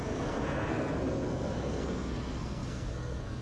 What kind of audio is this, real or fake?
fake